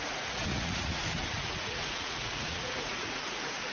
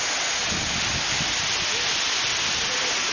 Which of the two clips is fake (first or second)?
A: first